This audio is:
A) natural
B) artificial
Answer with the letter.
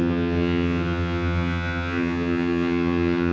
B